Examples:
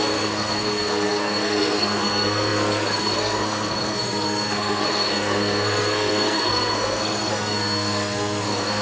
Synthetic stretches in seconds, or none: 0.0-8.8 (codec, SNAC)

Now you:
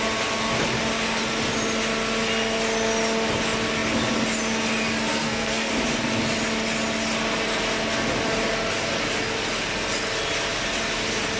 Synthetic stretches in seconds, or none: 5.1-5.7 (codec, SNAC)